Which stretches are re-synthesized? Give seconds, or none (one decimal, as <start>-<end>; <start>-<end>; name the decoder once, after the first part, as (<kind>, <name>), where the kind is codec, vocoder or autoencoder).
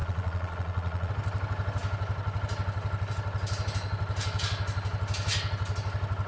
0.0-1.1 (vocoder, Vocos)